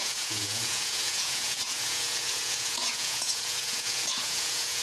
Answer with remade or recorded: remade